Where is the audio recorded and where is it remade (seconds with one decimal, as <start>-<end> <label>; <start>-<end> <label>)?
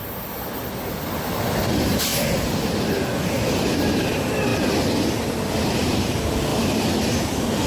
0.0-6.5 recorded; 6.5-7.7 remade